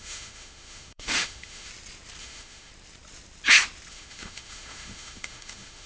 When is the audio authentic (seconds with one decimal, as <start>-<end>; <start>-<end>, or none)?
1.7-2.2; 2.7-3.9